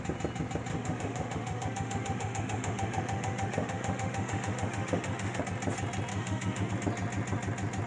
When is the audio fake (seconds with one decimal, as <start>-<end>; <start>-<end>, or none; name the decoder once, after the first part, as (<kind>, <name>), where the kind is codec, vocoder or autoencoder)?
0.7-5.4 (autoencoder, DAC-VAE); 6.1-6.7